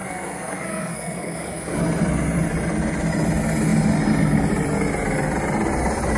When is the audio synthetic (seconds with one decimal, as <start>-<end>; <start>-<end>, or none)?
0.0-1.8

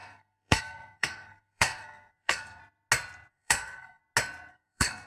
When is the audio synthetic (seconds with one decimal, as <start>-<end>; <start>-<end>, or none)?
0.0-2.6; 3.3-4.0; 4.5-5.1